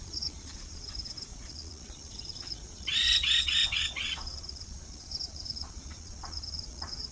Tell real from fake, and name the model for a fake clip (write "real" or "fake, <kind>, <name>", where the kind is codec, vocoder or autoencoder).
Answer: fake, vocoder, Vocos